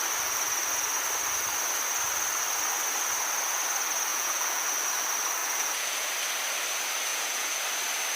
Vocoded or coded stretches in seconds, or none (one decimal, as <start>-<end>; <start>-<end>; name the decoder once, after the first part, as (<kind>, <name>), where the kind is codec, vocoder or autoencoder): 4.1-4.7 (vocoder, Vocos); 5.4-6.1; 7.1-7.6